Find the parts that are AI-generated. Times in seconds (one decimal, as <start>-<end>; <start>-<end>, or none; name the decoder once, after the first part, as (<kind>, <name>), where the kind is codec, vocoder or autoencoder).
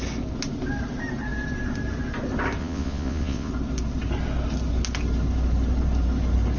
2.6-3.5 (vocoder, Vocos)